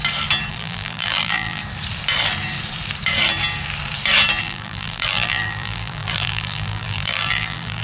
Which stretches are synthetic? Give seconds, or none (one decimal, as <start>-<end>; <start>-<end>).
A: 0.5-1.6; 4.4-7.8